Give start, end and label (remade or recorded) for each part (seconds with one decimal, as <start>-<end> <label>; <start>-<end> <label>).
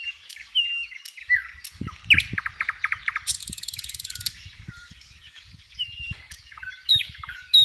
0.0-2.0 remade; 2.0-3.4 recorded; 3.4-7.6 remade